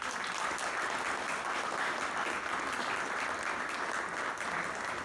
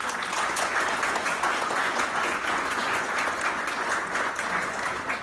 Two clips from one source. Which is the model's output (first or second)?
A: second